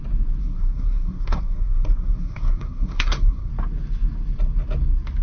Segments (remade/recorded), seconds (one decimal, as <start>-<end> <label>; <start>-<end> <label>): 0.0-0.4 recorded; 0.4-3.5 remade; 3.5-5.2 recorded

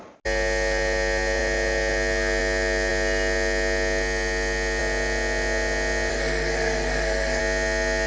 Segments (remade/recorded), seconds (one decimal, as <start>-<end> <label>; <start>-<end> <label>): 0.0-6.1 recorded; 6.1-7.4 remade; 7.4-8.1 recorded

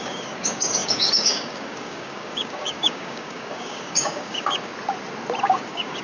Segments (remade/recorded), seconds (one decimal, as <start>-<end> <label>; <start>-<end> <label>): 0.0-4.7 remade; 4.7-5.4 recorded; 5.4-6.0 remade